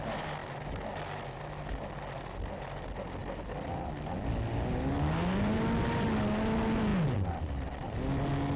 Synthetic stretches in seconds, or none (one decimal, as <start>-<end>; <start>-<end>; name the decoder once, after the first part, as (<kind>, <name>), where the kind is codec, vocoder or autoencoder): none